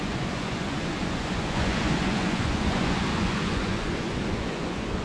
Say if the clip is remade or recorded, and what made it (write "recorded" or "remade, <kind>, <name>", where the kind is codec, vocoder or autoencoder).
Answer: remade, vocoder, Vocos